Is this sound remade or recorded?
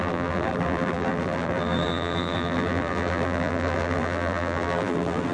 remade